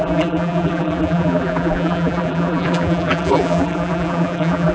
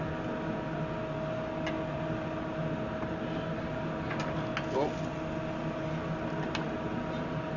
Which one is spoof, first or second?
first